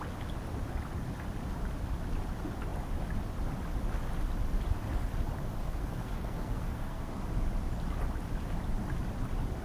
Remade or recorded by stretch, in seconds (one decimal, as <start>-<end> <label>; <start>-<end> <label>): 0.0-5.6 recorded; 5.6-7.2 remade; 7.2-9.6 recorded

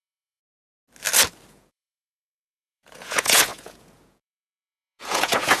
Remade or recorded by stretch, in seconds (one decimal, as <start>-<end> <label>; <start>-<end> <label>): 0.0-0.4 remade; 0.4-1.5 recorded; 1.5-5.6 remade

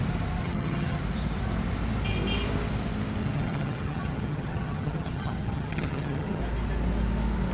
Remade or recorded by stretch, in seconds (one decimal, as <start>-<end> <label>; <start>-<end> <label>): 0.0-0.4 recorded; 0.4-1.0 remade; 1.0-3.2 recorded; 3.2-6.4 remade; 6.4-7.5 recorded

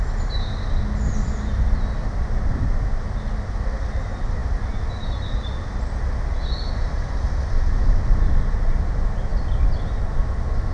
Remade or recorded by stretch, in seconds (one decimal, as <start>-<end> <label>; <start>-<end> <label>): 0.0-10.7 recorded